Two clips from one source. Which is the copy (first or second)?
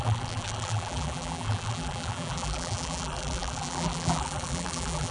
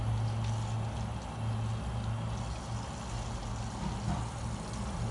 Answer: first